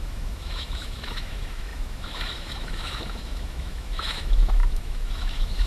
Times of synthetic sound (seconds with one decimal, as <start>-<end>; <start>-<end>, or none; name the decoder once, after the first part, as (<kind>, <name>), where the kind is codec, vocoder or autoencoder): 0.0-5.7 (autoencoder, DAC-VAE)